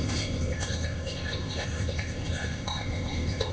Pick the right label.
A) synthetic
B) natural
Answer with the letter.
A